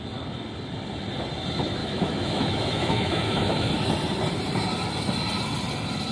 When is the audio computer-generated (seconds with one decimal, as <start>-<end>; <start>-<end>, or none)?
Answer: 1.8-3.7